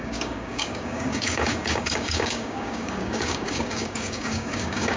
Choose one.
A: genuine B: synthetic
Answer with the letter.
B